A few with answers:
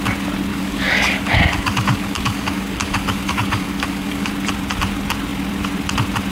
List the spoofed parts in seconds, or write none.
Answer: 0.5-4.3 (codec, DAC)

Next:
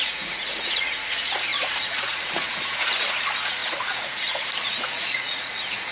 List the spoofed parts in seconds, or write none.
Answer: 0.0-5.9 (vocoder, Vocos)

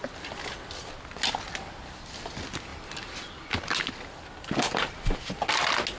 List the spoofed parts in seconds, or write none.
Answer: none

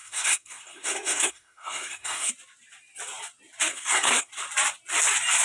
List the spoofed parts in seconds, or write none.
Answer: 0.0-2.3 (codec, SNAC); 3.7-4.3

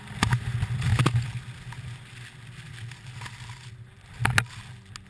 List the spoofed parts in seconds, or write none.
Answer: none

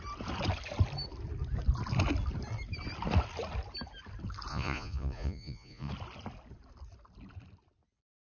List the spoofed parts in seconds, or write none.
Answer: 4.5-5.9 (vocoder, Vocos)

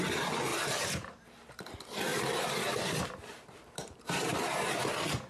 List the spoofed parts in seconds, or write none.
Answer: 0.5-1.6 (vocoder, BigVGAN v2); 2.1-4.8

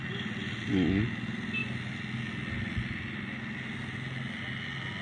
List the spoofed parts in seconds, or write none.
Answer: none